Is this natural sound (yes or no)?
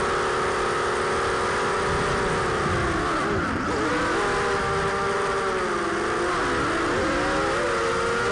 yes